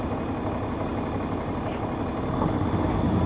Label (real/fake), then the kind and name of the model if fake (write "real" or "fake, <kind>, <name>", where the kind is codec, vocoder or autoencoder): real